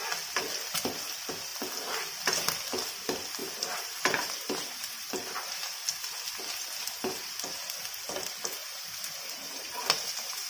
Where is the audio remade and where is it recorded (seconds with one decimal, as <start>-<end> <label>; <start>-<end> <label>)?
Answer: 0.0-3.4 recorded; 3.4-5.7 remade; 5.7-8.6 recorded; 8.6-10.5 remade